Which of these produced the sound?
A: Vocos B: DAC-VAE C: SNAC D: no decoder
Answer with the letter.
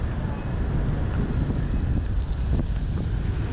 D